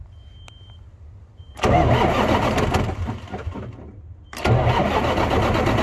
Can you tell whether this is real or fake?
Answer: real